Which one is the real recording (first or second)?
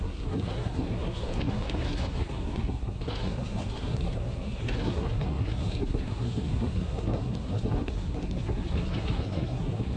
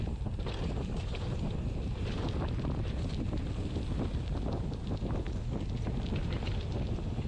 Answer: second